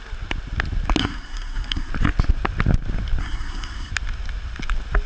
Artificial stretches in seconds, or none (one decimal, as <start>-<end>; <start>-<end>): 1.0-1.9; 3.2-3.9